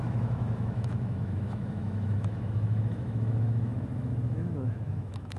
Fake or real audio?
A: fake